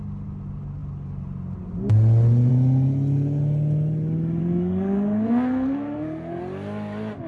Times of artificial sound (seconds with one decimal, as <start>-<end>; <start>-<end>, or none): 4.4-6.4